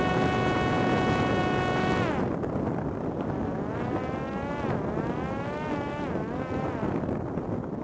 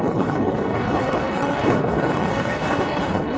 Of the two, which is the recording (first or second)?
first